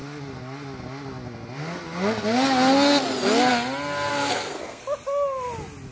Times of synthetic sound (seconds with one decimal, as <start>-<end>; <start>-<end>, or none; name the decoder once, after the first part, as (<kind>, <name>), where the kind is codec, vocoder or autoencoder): 4.1-4.8 (codec, SNAC)